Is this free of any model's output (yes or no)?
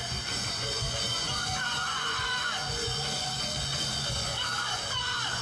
no